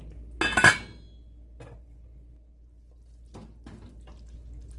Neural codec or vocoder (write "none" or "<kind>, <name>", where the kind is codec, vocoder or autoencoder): none